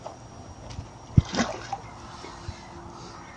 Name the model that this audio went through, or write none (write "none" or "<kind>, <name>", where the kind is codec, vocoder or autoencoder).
none